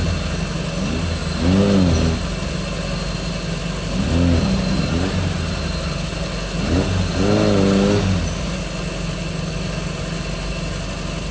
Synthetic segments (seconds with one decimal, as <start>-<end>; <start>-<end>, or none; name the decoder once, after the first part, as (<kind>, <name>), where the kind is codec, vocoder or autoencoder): none